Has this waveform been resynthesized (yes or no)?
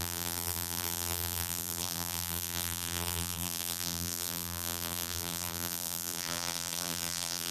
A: yes